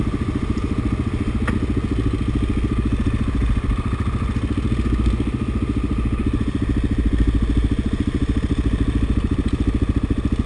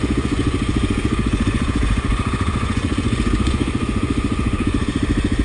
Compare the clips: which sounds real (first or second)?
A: first